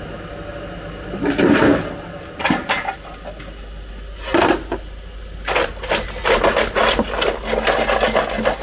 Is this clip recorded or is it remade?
recorded